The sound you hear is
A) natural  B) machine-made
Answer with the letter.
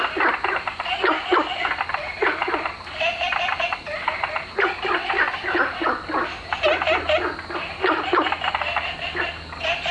A